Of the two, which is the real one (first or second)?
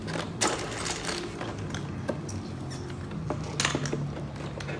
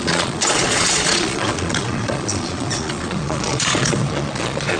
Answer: first